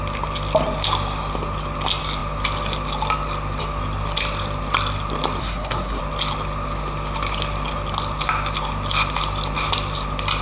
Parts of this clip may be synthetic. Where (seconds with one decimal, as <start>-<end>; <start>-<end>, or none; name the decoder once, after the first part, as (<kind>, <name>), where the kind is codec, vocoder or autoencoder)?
5.4-6.0 (codec, SNAC)